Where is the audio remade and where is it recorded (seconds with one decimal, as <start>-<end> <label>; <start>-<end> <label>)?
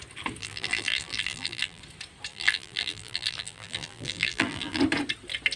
0.0-0.4 recorded; 0.4-1.8 remade; 1.8-2.3 recorded; 2.3-4.8 remade; 4.8-5.6 recorded